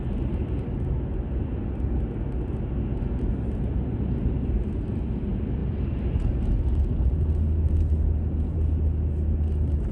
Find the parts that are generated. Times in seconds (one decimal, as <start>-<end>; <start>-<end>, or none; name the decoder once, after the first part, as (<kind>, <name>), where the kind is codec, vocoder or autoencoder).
none